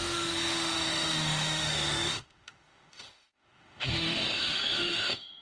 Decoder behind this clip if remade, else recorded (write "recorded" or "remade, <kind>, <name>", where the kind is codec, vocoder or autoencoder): remade, autoencoder, DAC-VAE